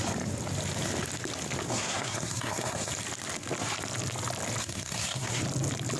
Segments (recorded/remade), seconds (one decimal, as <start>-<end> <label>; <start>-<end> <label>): 0.0-1.7 recorded; 1.7-2.9 remade; 2.9-4.6 recorded; 4.6-5.4 remade; 5.4-6.0 recorded